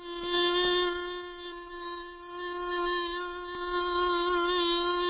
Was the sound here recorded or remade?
recorded